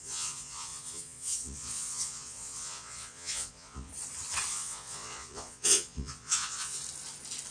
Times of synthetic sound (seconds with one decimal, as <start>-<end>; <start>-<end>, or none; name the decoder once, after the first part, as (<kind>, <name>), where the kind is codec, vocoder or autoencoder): 0.0-3.9 (vocoder, Vocos); 4.5-6.8